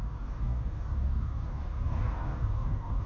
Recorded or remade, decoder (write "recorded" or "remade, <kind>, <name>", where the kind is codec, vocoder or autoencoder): remade, codec, DAC